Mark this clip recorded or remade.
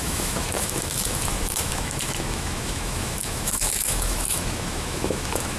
remade